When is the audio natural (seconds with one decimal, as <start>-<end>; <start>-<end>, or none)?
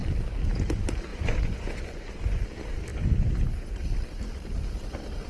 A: 0.0-1.1; 2.4-5.3